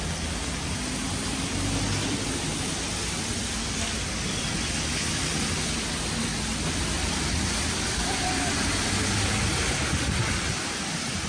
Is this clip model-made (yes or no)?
no